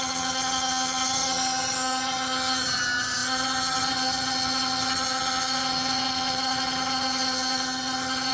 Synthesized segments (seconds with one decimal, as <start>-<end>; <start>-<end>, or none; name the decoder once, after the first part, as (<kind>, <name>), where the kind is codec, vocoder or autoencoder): 0.0-8.3 (vocoder, HiFi-GAN)

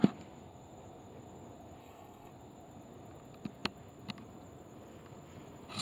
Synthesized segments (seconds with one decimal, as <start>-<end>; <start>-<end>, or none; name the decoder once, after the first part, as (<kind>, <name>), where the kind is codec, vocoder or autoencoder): 1.8-2.3 (codec, SNAC)

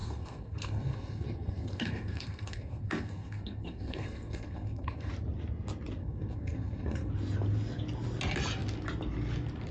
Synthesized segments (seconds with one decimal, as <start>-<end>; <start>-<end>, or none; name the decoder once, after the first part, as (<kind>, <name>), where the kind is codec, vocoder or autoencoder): 0.0-5.1 (codec, SNAC); 6.0-7.1

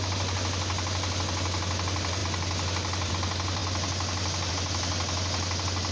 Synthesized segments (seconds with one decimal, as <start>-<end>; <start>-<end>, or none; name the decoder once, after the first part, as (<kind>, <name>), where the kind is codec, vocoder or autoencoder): none